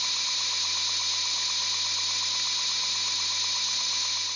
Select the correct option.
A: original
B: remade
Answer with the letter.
A